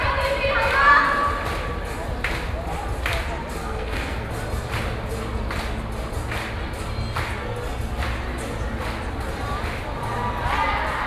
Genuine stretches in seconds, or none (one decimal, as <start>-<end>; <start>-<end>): 0.0-3.6; 4.3-11.1